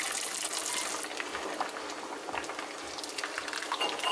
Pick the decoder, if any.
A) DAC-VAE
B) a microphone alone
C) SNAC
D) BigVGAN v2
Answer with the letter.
B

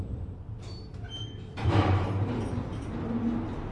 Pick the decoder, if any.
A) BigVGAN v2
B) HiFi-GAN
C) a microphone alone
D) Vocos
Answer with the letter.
A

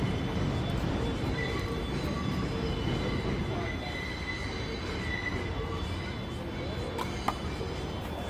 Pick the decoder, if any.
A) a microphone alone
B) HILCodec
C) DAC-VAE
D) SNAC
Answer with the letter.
A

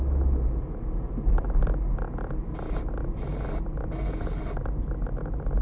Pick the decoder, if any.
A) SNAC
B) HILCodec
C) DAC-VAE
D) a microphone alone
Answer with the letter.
D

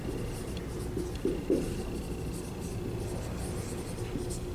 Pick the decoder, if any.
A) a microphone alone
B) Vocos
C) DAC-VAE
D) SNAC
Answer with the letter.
A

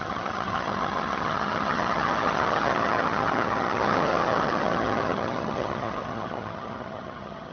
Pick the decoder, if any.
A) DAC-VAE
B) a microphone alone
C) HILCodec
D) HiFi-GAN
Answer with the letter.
D